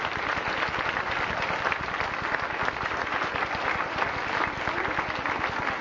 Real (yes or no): yes